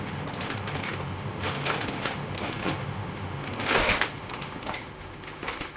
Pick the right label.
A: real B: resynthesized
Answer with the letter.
B